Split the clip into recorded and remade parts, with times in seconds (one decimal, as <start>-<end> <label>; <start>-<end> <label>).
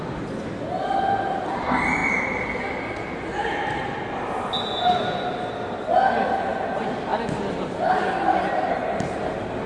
0.0-9.7 recorded